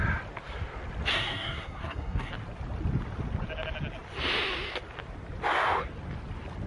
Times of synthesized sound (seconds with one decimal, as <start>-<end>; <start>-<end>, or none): 1.1-2.3